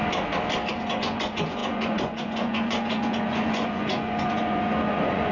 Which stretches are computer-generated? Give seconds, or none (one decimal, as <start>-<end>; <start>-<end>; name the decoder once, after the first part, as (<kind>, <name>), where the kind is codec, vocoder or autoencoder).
0.7-5.3 (vocoder, Vocos)